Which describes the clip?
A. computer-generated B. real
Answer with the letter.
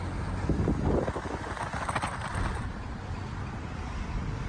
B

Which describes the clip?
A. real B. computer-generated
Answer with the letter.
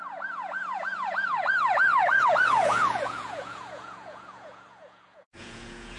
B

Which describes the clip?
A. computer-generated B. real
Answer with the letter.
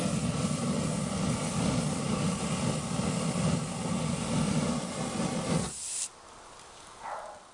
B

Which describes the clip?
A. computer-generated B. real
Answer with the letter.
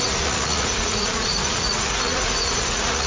A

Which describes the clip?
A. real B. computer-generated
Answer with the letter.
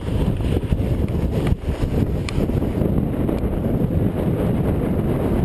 A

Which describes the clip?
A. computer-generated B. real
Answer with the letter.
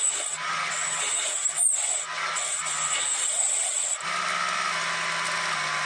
B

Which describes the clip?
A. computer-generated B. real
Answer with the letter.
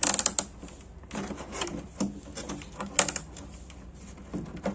B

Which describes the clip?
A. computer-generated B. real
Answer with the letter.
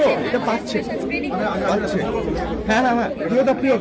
B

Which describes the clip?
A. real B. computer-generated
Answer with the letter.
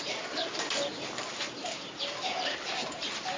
A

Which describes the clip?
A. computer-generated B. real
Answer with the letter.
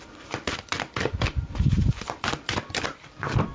A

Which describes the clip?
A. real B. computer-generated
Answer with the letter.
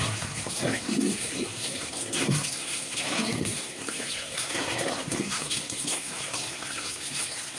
B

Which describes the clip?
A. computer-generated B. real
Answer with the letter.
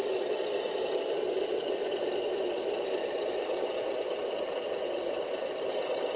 B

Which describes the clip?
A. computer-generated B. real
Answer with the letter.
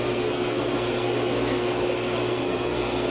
A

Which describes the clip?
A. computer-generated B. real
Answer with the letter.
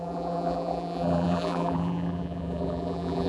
A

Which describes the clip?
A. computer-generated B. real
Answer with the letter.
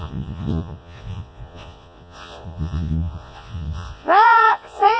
A